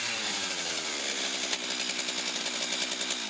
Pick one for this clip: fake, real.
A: real